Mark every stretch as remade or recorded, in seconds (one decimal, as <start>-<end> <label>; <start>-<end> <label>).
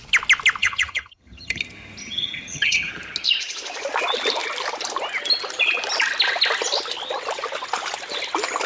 0.0-0.6 recorded; 0.6-1.6 remade; 1.6-2.0 recorded; 2.0-2.9 remade; 2.9-8.7 recorded